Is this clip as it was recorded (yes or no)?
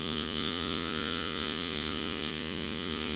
no